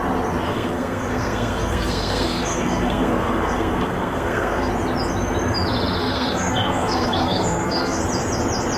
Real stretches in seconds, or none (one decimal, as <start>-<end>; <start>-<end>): 0.0-0.5; 4.7-6.0; 8.0-8.8